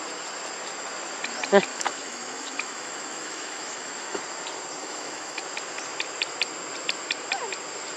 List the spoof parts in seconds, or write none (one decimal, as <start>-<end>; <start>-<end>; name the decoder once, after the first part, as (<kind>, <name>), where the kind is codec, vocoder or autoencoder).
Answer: 1.7-4.2 (autoencoder, DAC-VAE); 4.8-5.4

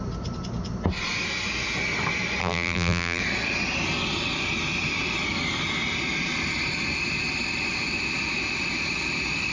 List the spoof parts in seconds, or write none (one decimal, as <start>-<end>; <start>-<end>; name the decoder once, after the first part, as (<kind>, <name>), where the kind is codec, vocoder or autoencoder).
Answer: 2.4-3.2 (vocoder, BigVGAN v2)